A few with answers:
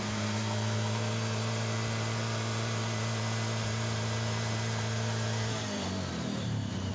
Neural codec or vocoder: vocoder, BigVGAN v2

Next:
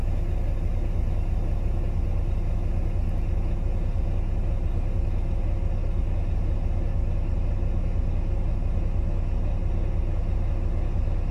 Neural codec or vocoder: none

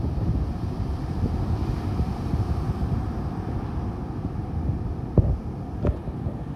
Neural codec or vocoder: none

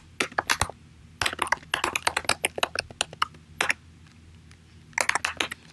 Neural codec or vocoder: none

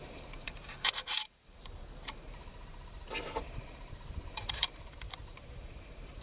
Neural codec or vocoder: vocoder, BigVGAN v2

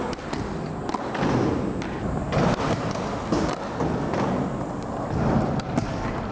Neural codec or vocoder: none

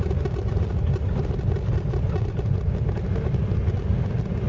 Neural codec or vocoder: none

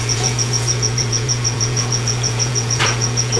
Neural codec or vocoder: vocoder, Vocos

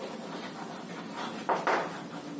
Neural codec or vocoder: none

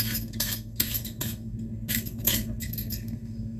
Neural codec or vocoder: codec, SNAC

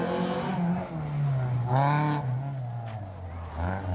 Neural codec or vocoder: none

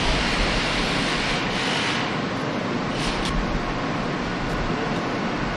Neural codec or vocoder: none